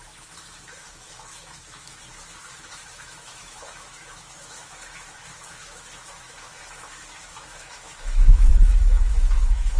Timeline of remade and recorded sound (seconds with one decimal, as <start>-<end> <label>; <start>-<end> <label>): 0.0-9.8 remade